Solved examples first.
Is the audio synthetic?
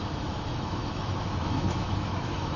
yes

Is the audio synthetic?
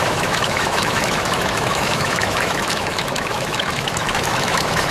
yes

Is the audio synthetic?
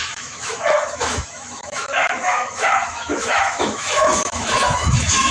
yes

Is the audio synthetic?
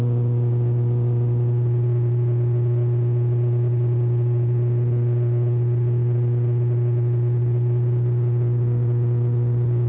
no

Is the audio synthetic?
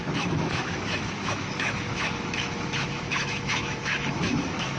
yes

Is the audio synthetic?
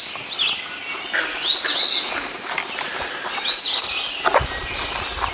no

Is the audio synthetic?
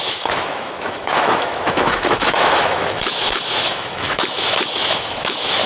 yes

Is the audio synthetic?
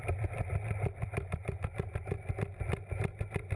no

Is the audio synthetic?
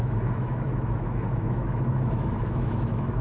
yes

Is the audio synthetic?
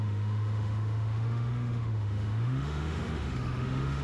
yes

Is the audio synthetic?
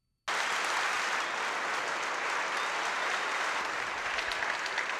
no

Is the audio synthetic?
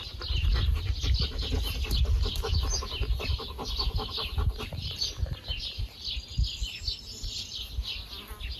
no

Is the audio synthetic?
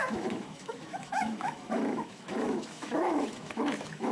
yes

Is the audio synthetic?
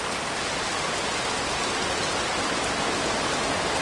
no